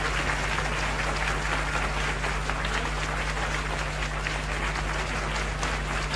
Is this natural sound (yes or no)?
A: yes